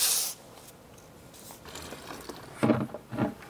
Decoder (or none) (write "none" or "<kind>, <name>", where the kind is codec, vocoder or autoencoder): none